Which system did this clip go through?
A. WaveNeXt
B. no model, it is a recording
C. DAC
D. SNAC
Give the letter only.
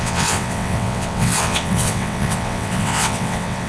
A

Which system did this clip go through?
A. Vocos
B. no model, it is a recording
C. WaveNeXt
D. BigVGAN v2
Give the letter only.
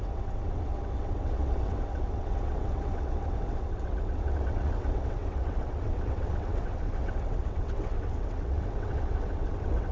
C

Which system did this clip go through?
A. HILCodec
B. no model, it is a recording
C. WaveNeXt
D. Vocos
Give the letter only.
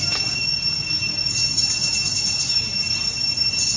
B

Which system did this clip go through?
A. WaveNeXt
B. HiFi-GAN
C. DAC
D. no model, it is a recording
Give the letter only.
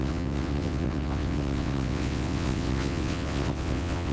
A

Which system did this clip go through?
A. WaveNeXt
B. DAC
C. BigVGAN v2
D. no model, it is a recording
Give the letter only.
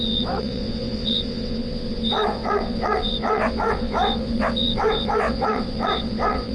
A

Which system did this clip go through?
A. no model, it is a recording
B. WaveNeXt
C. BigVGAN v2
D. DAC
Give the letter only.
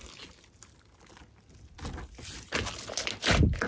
A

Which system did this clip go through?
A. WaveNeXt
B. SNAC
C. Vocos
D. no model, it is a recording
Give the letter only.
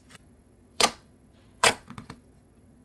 A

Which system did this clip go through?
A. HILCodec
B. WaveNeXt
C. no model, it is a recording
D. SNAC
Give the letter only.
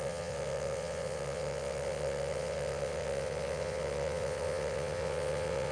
B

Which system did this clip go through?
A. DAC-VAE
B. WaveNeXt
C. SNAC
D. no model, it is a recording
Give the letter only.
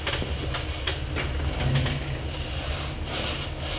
D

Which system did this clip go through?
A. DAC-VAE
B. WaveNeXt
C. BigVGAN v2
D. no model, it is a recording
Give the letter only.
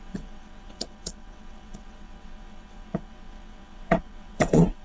B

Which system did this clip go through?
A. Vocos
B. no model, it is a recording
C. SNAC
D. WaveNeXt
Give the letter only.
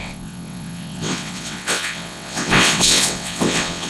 D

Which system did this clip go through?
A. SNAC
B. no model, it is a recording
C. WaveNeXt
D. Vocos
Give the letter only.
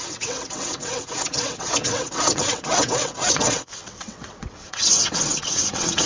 C